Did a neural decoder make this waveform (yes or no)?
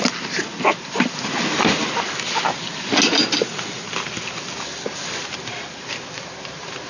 no